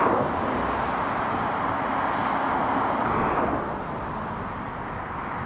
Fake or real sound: real